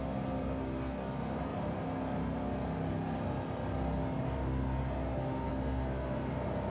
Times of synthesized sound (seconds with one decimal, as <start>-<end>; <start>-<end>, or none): none